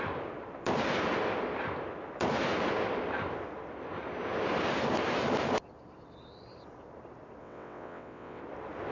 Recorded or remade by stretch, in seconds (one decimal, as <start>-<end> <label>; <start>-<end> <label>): 0.0-7.4 recorded; 7.4-8.4 remade; 8.4-8.9 recorded